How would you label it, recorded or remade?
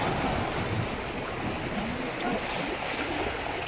recorded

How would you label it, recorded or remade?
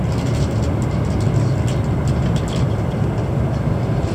recorded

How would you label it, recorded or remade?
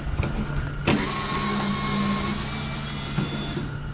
recorded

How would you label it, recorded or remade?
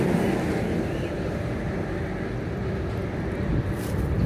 recorded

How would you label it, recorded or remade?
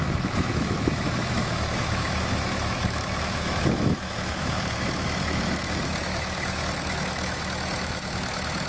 remade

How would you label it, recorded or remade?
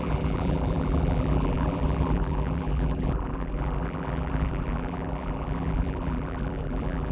remade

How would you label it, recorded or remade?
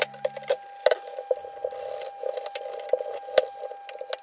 recorded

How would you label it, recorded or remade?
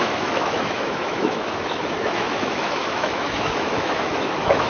remade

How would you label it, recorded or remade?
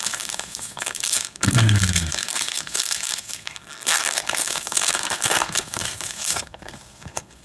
remade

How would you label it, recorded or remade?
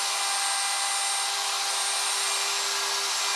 recorded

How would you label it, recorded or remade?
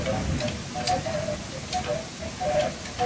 recorded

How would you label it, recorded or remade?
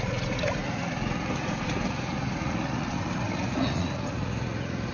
remade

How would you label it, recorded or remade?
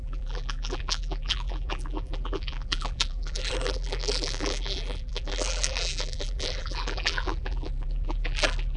remade